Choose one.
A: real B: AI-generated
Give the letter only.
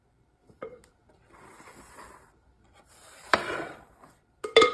A